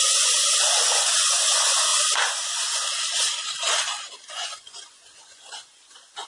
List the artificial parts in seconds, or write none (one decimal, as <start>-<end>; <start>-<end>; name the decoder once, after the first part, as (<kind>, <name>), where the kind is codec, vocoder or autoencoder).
0.0-1.9 (vocoder, Vocos); 4.3-6.3